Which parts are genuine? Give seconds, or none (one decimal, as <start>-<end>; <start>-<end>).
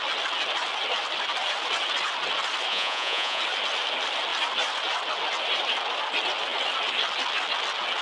0.0-2.7; 3.4-8.0